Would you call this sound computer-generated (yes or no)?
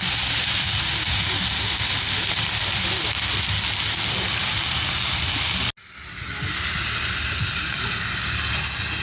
no